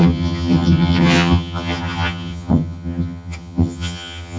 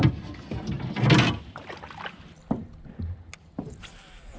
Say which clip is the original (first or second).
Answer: second